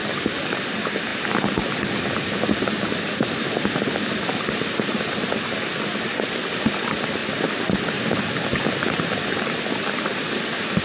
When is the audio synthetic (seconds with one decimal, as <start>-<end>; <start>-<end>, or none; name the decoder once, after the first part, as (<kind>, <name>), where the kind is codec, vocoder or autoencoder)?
0.5-1.1 (vocoder, BigVGAN v2); 6.2-10.8